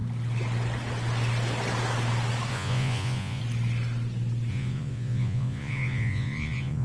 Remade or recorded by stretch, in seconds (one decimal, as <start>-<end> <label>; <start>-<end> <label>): 0.0-2.5 recorded; 2.5-3.4 remade; 3.4-4.5 recorded; 4.5-6.8 remade

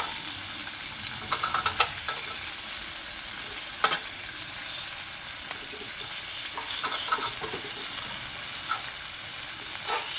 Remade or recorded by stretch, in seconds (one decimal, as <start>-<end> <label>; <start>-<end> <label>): 0.0-10.2 recorded

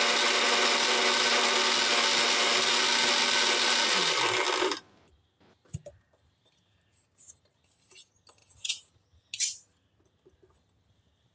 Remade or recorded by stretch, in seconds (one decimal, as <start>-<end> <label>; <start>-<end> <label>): 0.0-8.4 recorded; 8.4-8.9 remade; 8.9-11.3 recorded

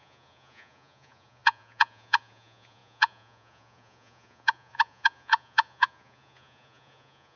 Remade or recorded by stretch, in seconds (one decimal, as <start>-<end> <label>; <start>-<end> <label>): 0.0-7.4 remade